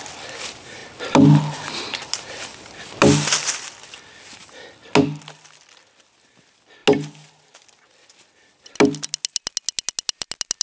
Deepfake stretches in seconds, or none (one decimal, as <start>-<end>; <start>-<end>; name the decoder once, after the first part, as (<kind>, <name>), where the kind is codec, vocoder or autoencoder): none